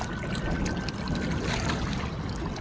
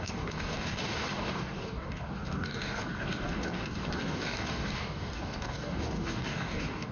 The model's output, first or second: second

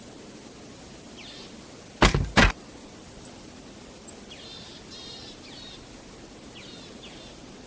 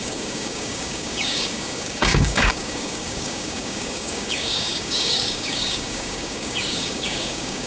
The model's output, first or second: second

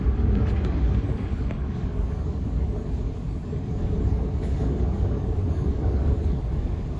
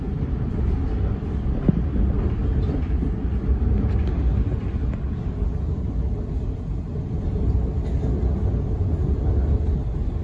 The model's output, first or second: first